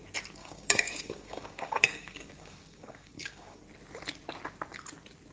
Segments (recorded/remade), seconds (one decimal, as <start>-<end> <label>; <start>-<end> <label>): 0.0-0.4 recorded; 0.4-3.6 remade; 3.6-5.3 recorded